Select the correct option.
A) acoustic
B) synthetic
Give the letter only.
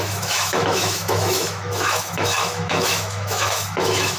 B